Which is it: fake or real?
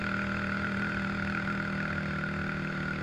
real